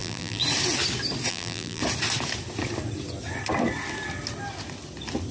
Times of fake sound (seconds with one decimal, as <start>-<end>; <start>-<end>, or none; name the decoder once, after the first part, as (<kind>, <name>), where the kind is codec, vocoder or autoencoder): 0.0-0.4 (vocoder, BigVGAN v2); 1.3-1.8